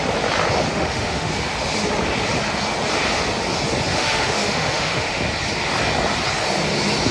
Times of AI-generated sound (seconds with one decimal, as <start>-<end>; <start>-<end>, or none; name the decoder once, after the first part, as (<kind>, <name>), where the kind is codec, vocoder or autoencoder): 0.7-1.3 (autoencoder, DAC-VAE); 3.9-5.2